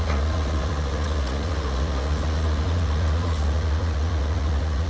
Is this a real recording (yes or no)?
no